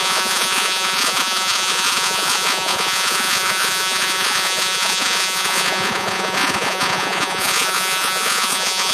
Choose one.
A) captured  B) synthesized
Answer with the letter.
B